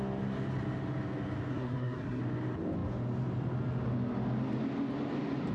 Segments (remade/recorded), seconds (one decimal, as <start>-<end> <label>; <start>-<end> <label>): 0.0-1.5 recorded; 1.5-2.2 remade; 2.2-5.5 recorded